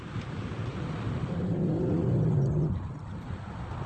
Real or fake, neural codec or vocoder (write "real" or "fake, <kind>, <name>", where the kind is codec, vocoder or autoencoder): fake, vocoder, BigVGAN v2